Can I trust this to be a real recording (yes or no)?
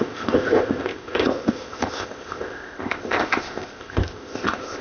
no